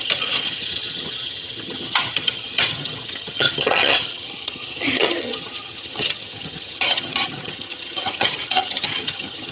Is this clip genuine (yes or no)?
no